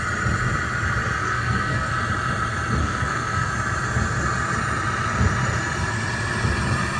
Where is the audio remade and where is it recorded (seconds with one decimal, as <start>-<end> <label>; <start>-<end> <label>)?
0.0-1.2 recorded; 1.2-1.9 remade; 1.9-2.8 recorded; 2.8-3.5 remade; 3.5-7.0 recorded